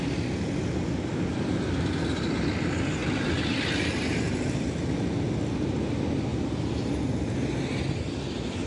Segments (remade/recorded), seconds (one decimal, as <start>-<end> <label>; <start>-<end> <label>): 0.0-8.7 recorded